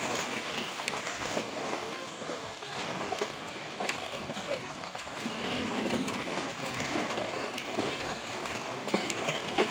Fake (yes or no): yes